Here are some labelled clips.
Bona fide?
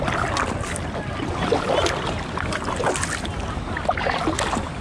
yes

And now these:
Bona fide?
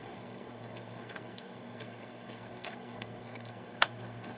no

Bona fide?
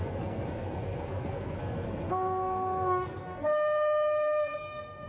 no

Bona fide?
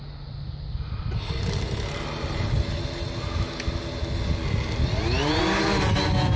yes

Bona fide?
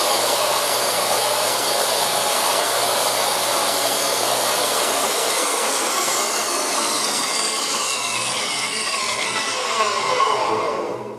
no